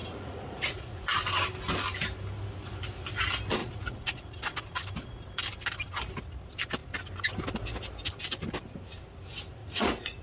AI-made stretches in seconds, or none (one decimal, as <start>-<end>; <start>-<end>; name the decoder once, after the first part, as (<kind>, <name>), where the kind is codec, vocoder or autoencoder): 0.0-1.0 (vocoder, Vocos); 3.6-4.4; 9.6-10.2